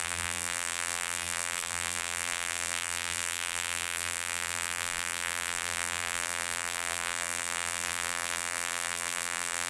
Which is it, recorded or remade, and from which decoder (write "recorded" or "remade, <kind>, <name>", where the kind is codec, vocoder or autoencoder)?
remade, vocoder, BigVGAN v2